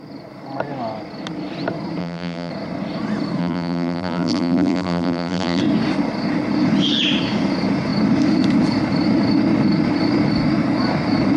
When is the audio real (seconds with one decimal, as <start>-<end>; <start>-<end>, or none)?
0.0-2.0; 2.5-3.4; 5.6-11.4